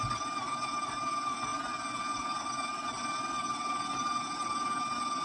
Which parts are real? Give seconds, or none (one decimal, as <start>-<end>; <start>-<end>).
0.0-5.2